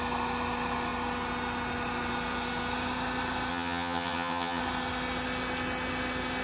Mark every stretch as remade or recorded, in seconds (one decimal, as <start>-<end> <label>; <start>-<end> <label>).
0.0-3.5 recorded; 3.5-4.6 remade; 4.6-6.4 recorded